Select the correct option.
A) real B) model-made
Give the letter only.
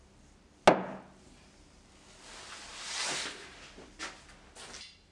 A